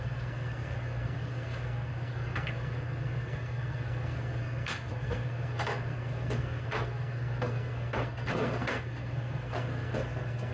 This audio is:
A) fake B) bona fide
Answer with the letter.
A